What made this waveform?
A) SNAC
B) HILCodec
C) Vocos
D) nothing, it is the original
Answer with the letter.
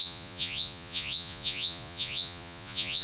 C